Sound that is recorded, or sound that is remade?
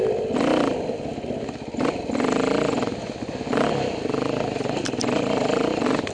recorded